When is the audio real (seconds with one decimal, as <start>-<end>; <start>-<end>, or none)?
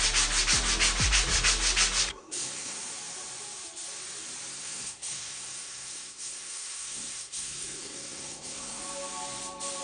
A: 0.0-2.1; 2.8-4.5; 8.8-9.8